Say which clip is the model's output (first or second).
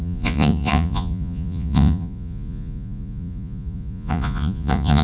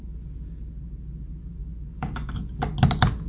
first